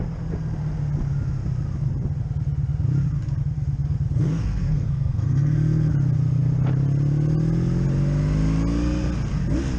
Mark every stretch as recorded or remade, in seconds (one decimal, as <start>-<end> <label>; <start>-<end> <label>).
0.0-4.2 recorded; 4.2-5.9 remade; 5.9-9.8 recorded